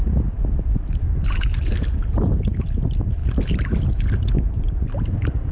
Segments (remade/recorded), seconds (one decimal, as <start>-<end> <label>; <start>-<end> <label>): 0.0-5.5 recorded